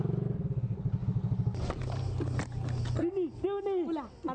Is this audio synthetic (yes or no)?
no